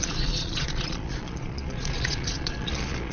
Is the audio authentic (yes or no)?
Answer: no